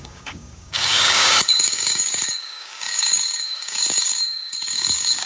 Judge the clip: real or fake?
fake